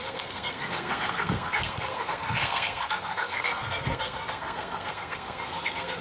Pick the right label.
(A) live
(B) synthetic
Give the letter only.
B